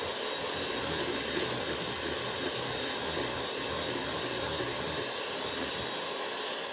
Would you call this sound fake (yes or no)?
no